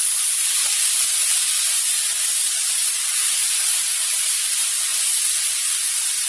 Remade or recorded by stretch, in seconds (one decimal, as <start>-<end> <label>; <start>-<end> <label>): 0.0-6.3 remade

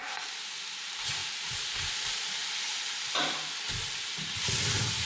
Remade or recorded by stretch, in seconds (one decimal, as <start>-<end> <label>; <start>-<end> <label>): 0.0-5.1 recorded

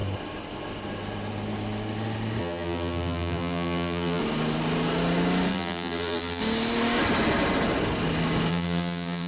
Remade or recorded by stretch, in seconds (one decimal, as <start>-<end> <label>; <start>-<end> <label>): 0.0-2.4 recorded; 2.4-4.2 remade; 4.2-5.5 recorded; 5.5-6.4 remade; 6.4-8.5 recorded; 8.5-9.3 remade

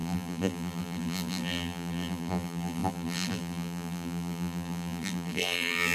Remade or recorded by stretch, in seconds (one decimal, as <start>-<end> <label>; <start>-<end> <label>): 0.0-5.9 remade

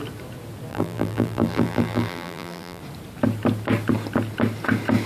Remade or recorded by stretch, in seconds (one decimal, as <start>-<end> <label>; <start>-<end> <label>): 0.0-0.7 recorded; 0.7-2.8 remade; 2.8-5.1 recorded

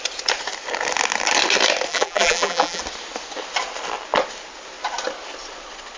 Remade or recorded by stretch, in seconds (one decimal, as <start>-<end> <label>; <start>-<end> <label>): 0.0-1.9 recorded; 1.9-2.8 remade; 2.8-6.0 recorded

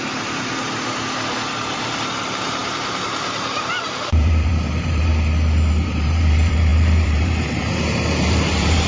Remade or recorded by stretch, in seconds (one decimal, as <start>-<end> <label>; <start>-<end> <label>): 0.0-5.1 remade; 5.1-5.7 recorded; 5.7-8.9 remade